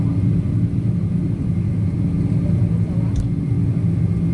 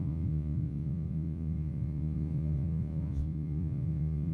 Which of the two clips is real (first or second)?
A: first